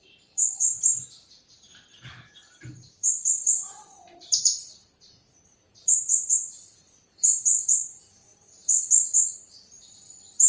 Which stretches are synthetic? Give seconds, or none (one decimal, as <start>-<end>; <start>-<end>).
0.0-10.5